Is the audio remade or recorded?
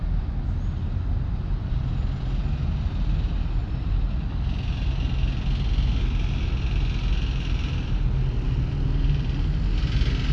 recorded